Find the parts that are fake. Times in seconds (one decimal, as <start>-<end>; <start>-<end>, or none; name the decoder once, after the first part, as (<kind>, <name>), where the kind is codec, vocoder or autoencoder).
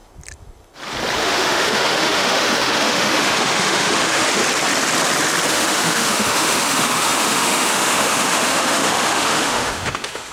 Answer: 1.2-4.4 (autoencoder, DAC-VAE); 5.5-10.3